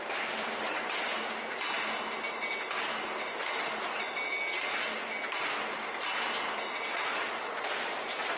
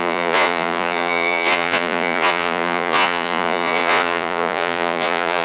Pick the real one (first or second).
first